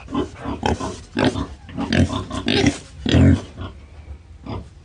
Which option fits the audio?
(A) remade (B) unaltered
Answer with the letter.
B